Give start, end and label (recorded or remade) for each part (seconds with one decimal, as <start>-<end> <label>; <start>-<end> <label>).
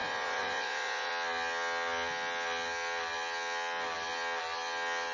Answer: 0.0-1.1 remade; 1.1-5.1 recorded